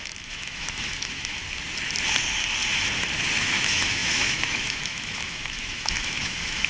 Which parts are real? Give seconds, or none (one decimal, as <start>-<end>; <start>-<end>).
1.4-3.4